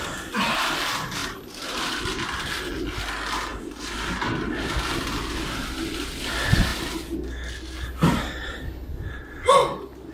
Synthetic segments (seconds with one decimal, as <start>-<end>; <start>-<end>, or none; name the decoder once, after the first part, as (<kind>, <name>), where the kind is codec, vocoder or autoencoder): 1.2-2.0 (vocoder, BigVGAN v2)